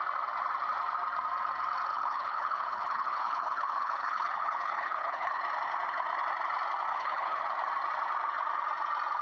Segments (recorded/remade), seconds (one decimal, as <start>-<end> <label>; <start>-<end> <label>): 0.0-1.9 recorded; 1.9-5.4 remade; 5.4-6.9 recorded; 6.9-7.4 remade; 7.4-9.2 recorded